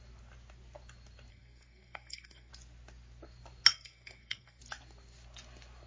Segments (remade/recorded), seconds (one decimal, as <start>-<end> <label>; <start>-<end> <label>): 0.0-1.3 recorded; 1.3-2.5 remade; 2.5-3.7 recorded; 3.7-4.6 remade; 4.6-5.9 recorded